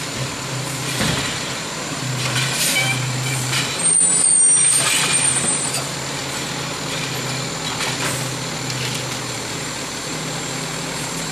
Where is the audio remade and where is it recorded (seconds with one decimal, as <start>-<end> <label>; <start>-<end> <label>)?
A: 0.0-6.2 remade; 6.2-9.2 recorded; 9.2-11.3 remade